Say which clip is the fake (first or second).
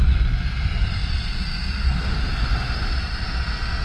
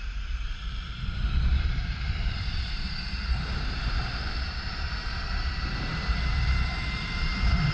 second